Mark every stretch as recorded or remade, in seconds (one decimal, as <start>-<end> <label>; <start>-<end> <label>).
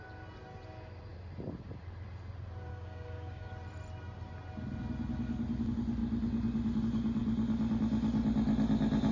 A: 0.0-2.7 recorded; 2.7-3.5 remade; 3.5-9.1 recorded